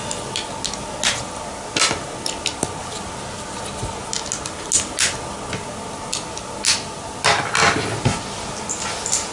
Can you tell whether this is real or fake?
real